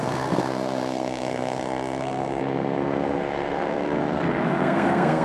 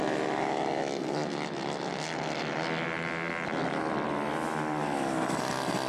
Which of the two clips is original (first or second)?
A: second